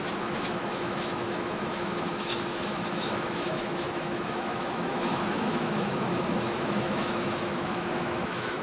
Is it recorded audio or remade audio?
remade